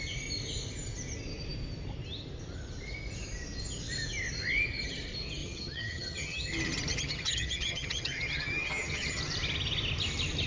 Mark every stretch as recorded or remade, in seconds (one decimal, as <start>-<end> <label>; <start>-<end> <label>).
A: 0.0-5.4 recorded; 5.4-6.5 remade; 6.5-6.9 recorded; 6.9-9.2 remade; 9.2-10.5 recorded